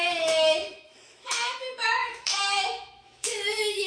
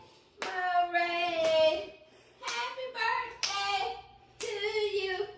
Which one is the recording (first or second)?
second